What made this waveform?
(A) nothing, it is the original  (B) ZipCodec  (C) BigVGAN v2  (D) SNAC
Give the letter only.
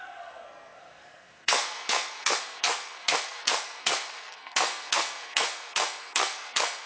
D